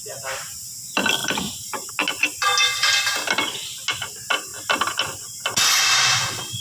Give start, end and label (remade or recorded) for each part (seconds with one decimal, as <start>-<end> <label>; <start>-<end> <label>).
0.0-1.2 recorded; 1.2-1.9 remade; 1.9-6.6 recorded